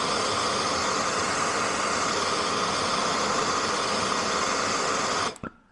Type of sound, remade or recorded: recorded